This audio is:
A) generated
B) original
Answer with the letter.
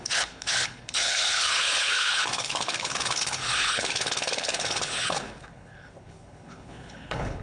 A